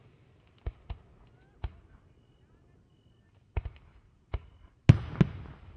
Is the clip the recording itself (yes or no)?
yes